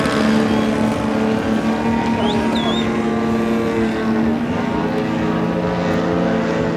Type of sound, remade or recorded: recorded